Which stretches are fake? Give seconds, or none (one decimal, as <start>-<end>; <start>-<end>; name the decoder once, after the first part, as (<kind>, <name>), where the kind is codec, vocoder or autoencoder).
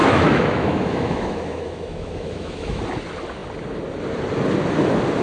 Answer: 0.0-2.8 (autoencoder, DAC-VAE)